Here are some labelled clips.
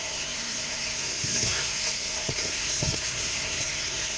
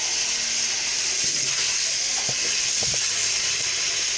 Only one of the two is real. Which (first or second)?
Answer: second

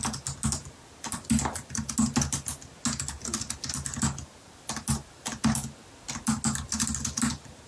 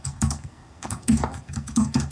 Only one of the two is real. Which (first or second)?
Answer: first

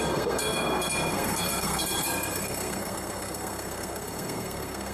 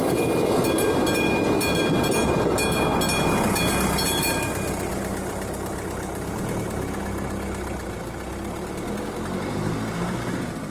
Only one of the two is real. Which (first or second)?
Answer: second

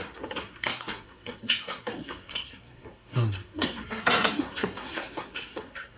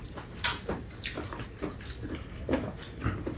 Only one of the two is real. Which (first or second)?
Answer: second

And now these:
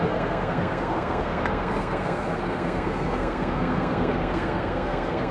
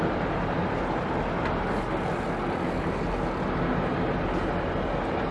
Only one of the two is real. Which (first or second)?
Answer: second